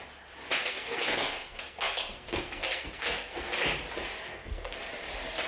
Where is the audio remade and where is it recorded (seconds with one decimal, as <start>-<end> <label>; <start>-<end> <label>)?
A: 0.0-0.6 recorded; 0.6-3.5 remade; 3.5-4.3 recorded; 4.3-4.8 remade; 4.8-5.5 recorded